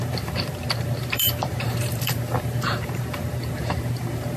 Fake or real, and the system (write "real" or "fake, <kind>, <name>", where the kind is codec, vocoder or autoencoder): fake, vocoder, BigVGAN v2